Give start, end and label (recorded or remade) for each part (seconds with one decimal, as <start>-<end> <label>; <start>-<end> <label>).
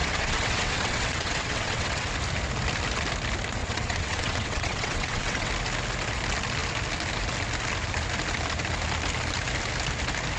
0.0-2.1 remade; 2.1-3.6 recorded; 3.6-5.5 remade; 5.5-10.4 recorded